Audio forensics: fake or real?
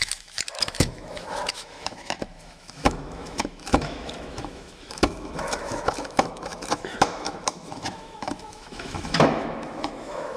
fake